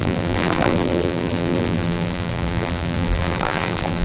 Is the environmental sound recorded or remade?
remade